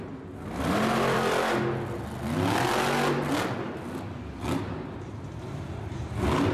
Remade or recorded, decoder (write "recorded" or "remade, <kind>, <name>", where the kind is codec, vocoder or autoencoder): recorded